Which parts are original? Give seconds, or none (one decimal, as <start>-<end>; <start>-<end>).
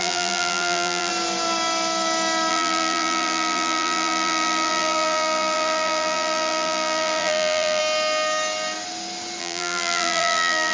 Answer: 1.1-2.5; 7.8-9.4